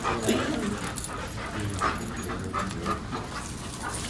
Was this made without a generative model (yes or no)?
yes